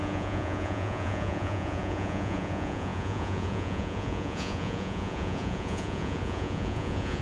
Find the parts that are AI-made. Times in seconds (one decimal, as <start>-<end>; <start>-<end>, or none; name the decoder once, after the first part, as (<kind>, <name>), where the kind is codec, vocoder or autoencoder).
0.0-7.2 (vocoder, Vocos)